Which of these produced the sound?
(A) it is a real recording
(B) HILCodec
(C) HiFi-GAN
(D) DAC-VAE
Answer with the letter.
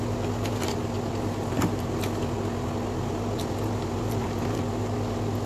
A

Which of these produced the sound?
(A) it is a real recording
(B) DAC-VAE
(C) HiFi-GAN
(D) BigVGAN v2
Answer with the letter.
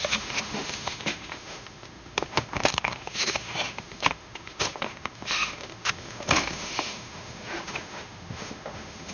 B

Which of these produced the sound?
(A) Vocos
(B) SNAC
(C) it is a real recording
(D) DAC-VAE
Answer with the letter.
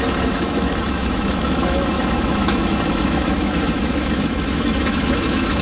D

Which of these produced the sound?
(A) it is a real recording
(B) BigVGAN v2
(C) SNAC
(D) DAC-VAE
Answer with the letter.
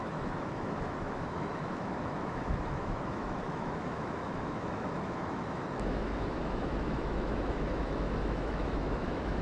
D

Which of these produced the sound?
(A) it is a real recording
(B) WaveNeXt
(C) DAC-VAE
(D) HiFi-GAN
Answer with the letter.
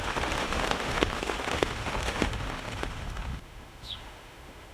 C